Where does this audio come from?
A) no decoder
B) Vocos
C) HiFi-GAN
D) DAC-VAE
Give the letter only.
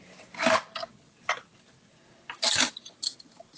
A